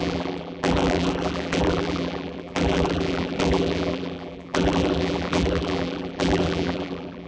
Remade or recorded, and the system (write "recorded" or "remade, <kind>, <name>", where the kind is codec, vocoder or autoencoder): remade, vocoder, BigVGAN v2